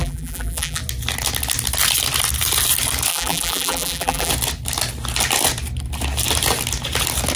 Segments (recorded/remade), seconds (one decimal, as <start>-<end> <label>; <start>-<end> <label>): 0.0-0.8 remade; 0.8-3.1 recorded; 3.1-4.3 remade; 4.3-7.4 recorded